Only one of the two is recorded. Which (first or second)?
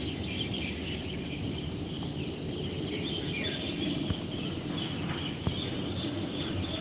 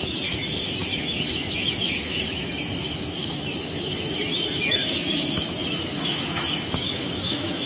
first